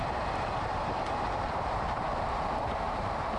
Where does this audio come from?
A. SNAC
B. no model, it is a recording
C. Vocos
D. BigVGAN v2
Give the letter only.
D